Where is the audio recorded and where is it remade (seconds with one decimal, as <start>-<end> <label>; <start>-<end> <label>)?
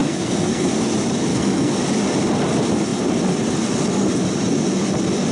0.0-0.7 remade; 0.7-1.3 recorded; 1.3-1.8 remade; 1.8-5.3 recorded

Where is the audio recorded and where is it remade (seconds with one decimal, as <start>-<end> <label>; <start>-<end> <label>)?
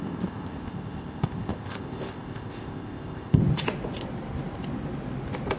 0.0-3.4 remade; 3.4-5.6 recorded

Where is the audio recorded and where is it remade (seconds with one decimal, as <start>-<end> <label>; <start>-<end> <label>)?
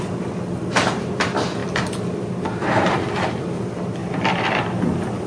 0.0-4.0 recorded; 4.0-5.3 remade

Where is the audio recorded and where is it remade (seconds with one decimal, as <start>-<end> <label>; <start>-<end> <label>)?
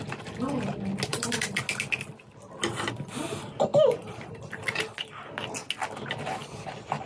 0.0-1.1 recorded; 1.1-1.6 remade; 1.6-3.7 recorded; 3.7-4.4 remade; 4.4-7.1 recorded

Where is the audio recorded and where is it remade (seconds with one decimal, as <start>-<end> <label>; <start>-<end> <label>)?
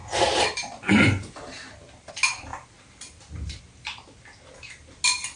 0.0-2.1 remade; 2.1-2.5 recorded; 2.5-3.6 remade; 3.6-5.4 recorded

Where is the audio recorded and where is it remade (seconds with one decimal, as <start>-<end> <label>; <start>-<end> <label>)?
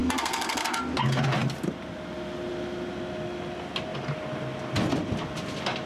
0.0-0.8 remade; 0.8-5.9 recorded